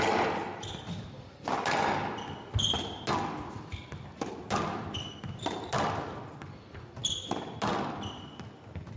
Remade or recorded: recorded